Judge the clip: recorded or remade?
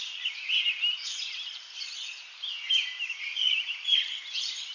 remade